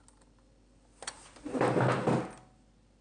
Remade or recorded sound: recorded